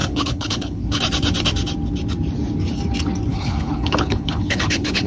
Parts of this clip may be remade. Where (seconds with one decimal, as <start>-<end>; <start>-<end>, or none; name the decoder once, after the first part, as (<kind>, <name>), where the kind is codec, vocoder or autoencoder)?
0.0-1.0 (codec, HILCodec); 3.3-5.1